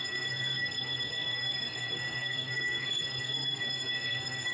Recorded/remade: remade